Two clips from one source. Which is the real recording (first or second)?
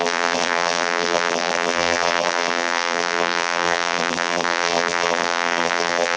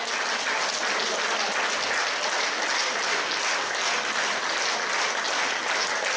second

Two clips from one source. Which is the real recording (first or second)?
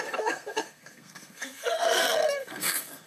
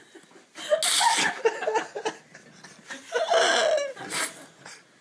second